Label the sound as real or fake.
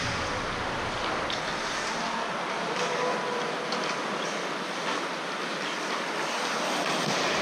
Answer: real